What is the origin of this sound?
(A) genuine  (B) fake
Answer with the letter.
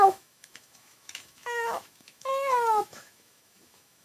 B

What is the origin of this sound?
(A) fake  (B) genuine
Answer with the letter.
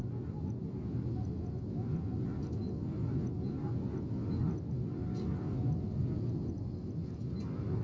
B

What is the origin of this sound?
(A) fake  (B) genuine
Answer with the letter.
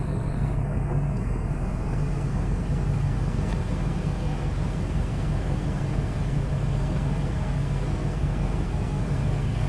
A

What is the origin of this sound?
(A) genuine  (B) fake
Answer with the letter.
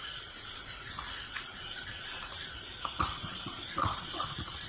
B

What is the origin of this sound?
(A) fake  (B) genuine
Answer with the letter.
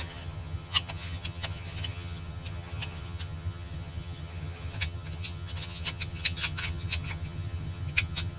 A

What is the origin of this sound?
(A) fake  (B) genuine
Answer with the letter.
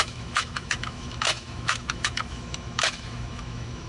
A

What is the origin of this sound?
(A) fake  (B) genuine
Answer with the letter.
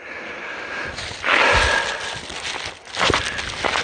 B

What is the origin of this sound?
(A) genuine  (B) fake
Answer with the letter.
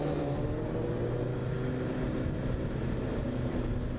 A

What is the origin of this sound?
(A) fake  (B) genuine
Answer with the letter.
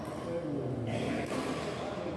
B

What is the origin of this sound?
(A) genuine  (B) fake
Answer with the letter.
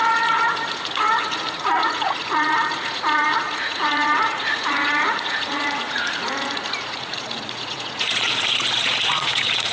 B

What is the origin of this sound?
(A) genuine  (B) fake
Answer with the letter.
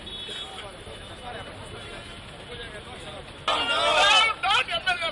A